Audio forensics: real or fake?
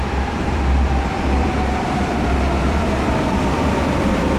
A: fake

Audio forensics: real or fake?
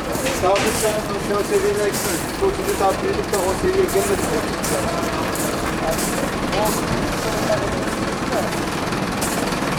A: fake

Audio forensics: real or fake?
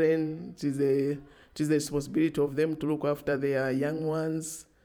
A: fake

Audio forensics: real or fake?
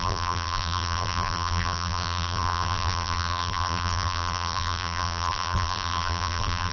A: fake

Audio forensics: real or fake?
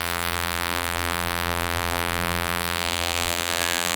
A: fake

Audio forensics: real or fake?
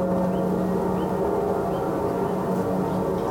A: fake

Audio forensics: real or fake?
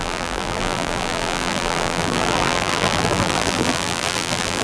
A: fake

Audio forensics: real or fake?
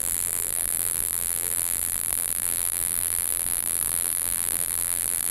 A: fake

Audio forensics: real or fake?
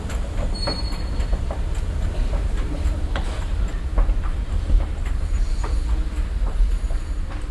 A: real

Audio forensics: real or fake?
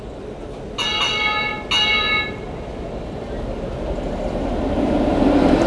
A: real